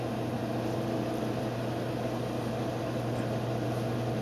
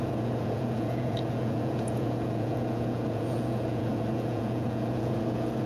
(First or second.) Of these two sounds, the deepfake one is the second